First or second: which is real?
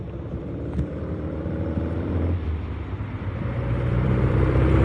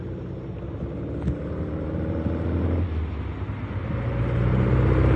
second